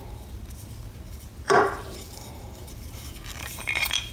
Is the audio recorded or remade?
remade